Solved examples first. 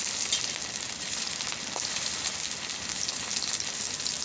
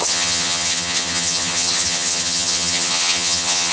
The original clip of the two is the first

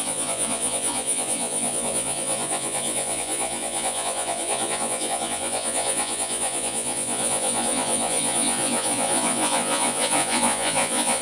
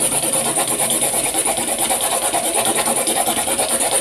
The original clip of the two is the second